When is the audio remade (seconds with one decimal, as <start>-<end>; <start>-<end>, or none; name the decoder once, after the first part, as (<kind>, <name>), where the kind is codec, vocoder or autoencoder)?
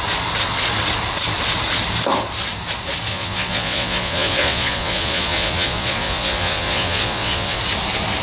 3.1-7.6 (vocoder, Vocos)